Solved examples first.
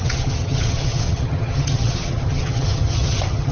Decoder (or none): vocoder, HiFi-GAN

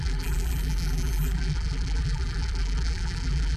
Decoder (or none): vocoder, BigVGAN v2